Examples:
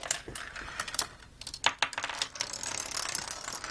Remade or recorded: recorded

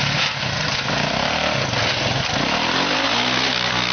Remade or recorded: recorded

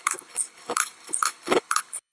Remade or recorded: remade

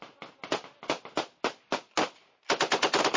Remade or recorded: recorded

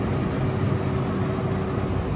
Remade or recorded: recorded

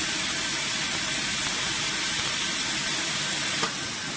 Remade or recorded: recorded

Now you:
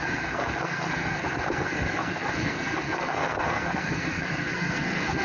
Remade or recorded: remade